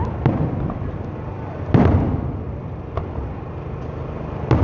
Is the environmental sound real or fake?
real